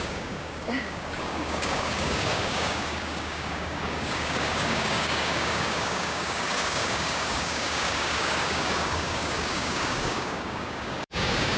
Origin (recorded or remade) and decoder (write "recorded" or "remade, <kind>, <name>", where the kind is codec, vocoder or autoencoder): remade, codec, DAC